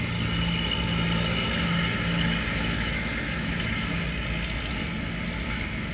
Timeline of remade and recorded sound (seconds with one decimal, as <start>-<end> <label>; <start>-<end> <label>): 0.0-2.5 recorded; 2.5-3.9 remade; 3.9-5.9 recorded